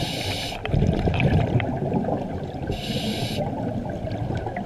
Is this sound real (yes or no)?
yes